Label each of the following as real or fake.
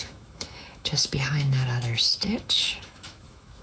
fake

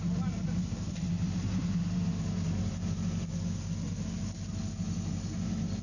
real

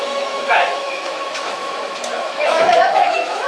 fake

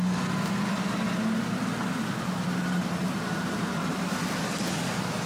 real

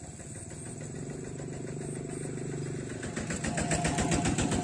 real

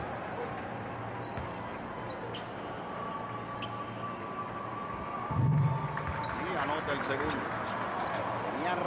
real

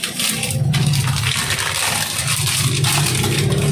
real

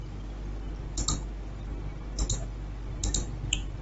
real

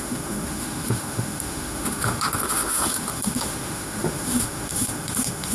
fake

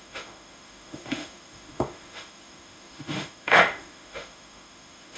fake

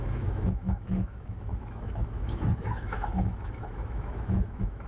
fake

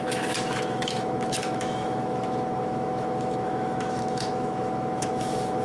fake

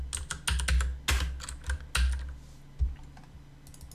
real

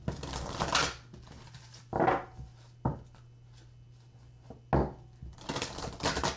real